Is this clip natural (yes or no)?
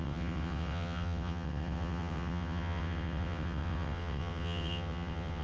no